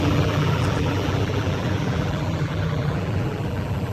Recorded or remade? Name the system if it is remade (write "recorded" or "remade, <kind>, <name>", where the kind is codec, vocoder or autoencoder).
remade, vocoder, BigVGAN v2